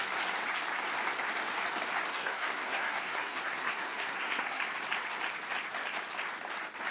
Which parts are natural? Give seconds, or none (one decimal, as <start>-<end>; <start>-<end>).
0.0-2.1; 4.6-6.9

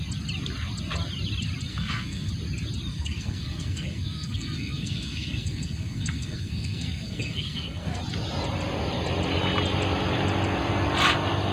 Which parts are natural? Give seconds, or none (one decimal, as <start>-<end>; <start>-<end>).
0.0-1.7; 2.3-2.9; 8.0-11.5

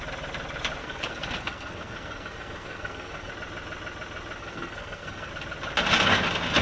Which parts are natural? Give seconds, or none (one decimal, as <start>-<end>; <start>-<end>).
0.0-0.8; 3.3-4.4; 5.3-6.6

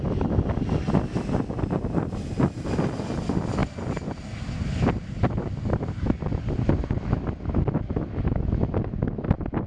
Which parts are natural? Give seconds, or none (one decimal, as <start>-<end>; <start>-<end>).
0.0-9.7